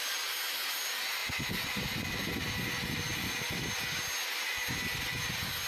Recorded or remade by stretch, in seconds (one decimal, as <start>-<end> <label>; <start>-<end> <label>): 0.0-5.7 recorded

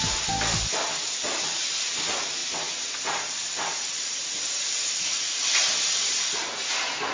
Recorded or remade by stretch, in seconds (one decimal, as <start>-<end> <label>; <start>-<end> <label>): 0.0-7.1 recorded

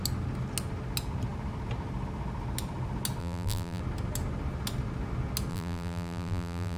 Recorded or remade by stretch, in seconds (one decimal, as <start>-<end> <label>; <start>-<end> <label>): 0.0-3.2 recorded; 3.2-3.8 remade; 3.8-5.5 recorded; 5.5-6.8 remade

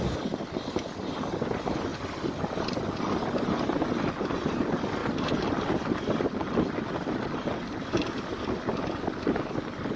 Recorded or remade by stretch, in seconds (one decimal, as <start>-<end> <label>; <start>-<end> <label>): 0.0-1.9 recorded; 1.9-2.9 remade; 2.9-5.0 recorded; 5.0-10.0 remade

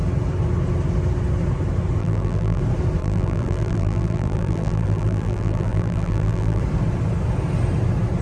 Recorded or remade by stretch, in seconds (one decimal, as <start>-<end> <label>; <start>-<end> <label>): 0.0-2.0 recorded; 2.0-2.6 remade; 2.6-3.0 recorded; 3.0-6.6 remade; 6.6-8.2 recorded

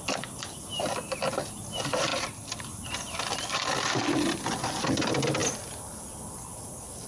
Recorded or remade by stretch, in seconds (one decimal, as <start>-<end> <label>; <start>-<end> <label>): 0.0-2.1 recorded; 2.1-2.6 remade; 2.6-7.1 recorded